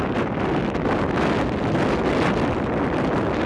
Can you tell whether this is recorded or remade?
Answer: recorded